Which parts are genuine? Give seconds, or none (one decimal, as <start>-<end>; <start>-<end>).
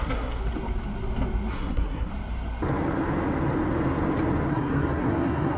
0.4-1.5; 2.1-4.5